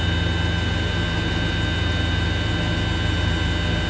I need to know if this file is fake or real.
real